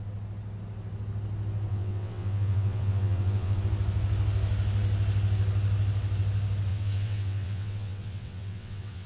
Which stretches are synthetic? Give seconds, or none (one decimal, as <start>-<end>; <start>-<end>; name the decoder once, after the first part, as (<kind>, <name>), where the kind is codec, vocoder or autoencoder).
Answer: 1.7-3.6 (vocoder, WaveNeXt); 6.7-9.1